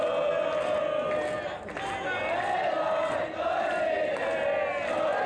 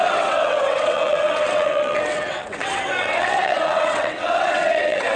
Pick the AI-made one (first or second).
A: second